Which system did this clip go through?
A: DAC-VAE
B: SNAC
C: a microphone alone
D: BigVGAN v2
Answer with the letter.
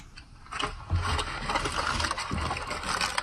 C